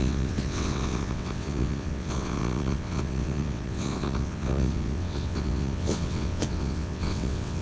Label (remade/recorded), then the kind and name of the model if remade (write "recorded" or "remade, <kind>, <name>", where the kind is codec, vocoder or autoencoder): remade, vocoder, WaveNeXt